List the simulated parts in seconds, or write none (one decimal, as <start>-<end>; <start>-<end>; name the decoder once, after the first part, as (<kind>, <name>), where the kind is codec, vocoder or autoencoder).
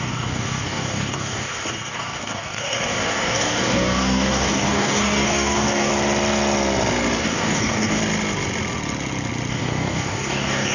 0.0-5.9 (codec, DAC); 7.2-8.0; 9.5-10.7